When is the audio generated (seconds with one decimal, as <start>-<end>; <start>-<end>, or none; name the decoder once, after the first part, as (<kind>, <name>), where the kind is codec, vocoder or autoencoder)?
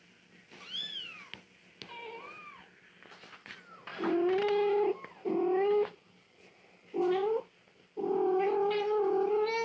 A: none